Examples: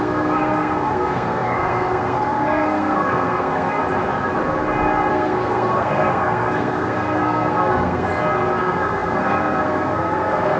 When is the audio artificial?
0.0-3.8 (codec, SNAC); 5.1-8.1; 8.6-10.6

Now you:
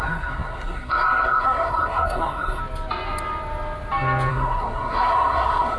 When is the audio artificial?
0.0-2.6 (codec, SNAC); 4.3-5.8

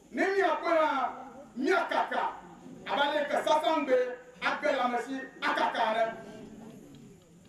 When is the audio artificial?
1.2-2.6 (vocoder, BigVGAN v2)

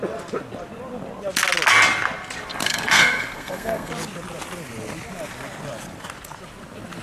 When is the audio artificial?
2.6-3.9 (codec, SNAC)

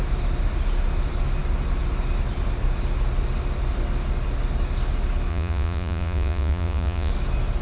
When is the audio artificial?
5.3-7.1 (vocoder, Vocos)

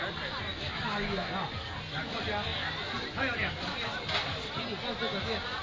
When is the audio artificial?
0.5-1.3 (autoencoder, DAC-VAE)

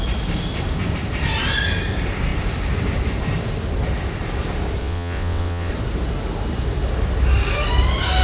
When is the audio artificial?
4.8-5.7 (vocoder, WaveNeXt)

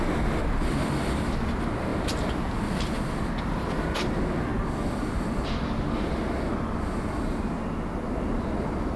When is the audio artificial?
none